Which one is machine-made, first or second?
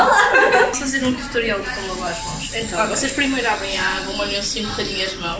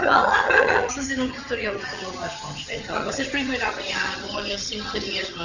second